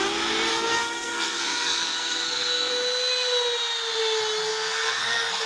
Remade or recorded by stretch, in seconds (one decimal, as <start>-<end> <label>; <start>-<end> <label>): 0.0-0.5 recorded; 0.5-2.7 remade; 2.7-4.5 recorded; 4.5-5.5 remade